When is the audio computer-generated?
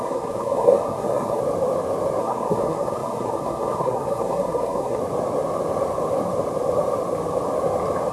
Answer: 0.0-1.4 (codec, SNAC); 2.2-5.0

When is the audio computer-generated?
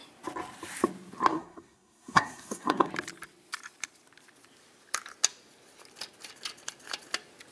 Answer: 1.3-2.9 (codec, SNAC)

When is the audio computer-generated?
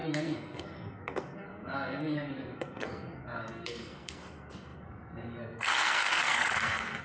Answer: 0.0-7.0 (codec, SNAC)